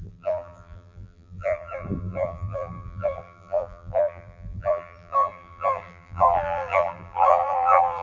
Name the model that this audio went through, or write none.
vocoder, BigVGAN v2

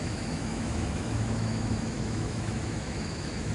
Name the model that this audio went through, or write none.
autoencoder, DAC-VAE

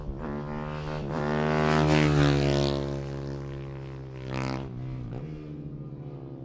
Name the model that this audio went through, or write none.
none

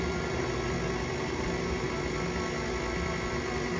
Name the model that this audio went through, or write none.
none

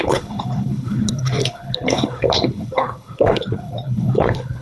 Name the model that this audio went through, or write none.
codec, HILCodec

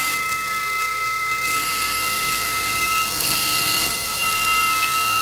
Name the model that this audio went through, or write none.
codec, SNAC